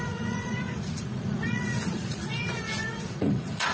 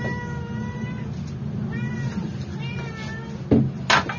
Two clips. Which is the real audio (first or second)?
second